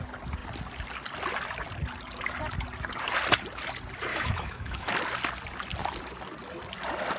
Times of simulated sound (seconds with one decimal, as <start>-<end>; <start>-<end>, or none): 4.1-4.9